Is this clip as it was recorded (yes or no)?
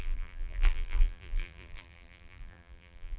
no